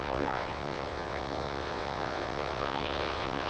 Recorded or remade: remade